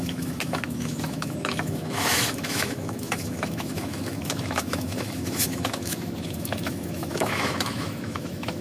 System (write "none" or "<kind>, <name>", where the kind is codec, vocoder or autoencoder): autoencoder, DAC-VAE